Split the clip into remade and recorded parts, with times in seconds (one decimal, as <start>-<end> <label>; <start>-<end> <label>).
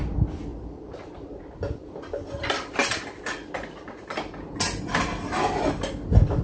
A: 0.0-6.4 recorded